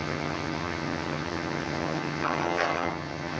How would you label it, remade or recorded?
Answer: remade